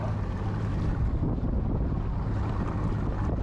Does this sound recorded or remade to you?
recorded